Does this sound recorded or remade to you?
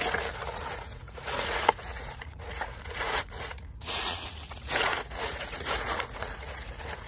remade